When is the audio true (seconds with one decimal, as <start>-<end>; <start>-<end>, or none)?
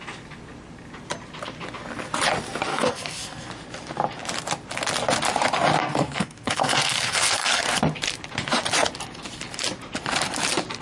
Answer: 0.0-2.7; 3.5-5.8; 7.6-10.8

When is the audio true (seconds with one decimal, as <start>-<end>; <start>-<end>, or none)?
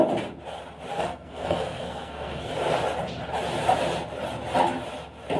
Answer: 0.0-0.9; 2.5-5.4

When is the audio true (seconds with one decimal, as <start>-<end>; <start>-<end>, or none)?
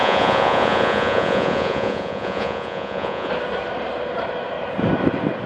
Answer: 3.3-5.5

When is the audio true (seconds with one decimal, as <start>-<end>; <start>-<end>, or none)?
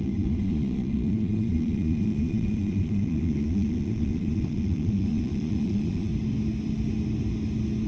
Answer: 6.1-7.9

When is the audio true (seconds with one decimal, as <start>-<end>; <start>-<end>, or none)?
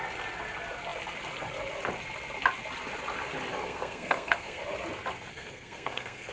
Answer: 0.0-3.5; 4.6-5.3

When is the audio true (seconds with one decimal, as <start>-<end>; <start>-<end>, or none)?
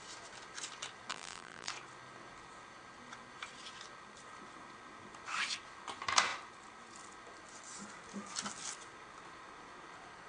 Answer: 0.0-1.1; 1.7-10.3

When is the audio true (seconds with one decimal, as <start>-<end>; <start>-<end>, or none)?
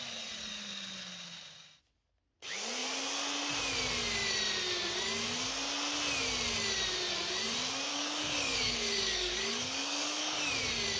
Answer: 0.0-7.9; 10.5-11.0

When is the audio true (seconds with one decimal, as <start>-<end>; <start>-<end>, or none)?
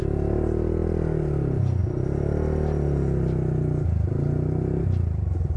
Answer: 0.0-5.6